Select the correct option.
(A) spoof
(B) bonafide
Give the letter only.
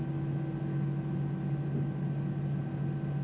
B